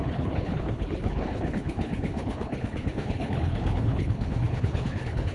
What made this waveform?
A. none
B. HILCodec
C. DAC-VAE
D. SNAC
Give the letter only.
B